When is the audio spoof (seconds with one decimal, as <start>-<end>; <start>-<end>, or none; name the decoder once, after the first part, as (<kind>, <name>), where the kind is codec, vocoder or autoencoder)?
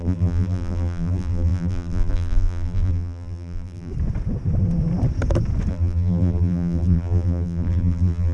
0.0-3.9 (vocoder, BigVGAN v2); 5.7-8.3